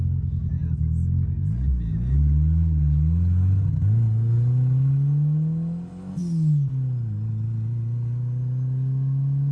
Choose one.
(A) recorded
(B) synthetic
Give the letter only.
A